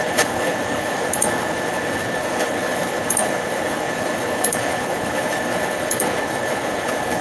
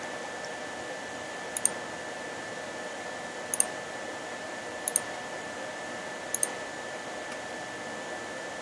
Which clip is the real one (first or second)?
second